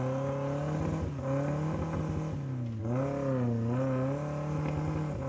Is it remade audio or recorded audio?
recorded